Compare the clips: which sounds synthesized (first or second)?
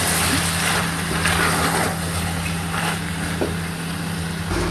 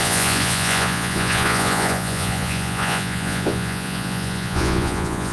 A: second